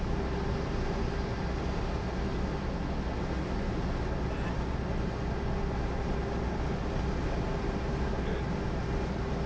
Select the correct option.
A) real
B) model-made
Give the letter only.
A